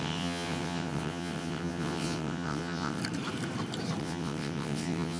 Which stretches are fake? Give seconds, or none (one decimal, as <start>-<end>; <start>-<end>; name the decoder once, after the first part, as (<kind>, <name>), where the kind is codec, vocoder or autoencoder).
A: 0.0-3.0 (vocoder, WaveNeXt); 4.0-5.2